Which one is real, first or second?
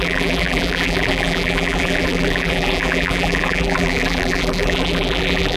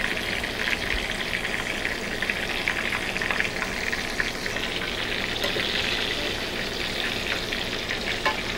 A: second